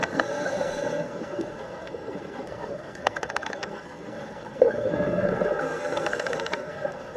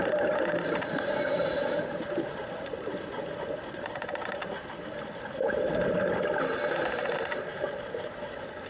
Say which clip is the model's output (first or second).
first